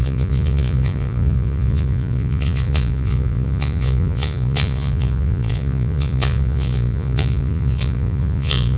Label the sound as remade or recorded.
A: remade